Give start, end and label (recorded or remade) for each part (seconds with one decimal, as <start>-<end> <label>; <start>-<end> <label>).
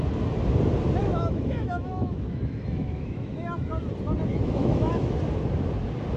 0.0-1.0 recorded; 1.0-3.7 remade; 3.7-4.3 recorded; 4.3-5.2 remade; 5.2-6.2 recorded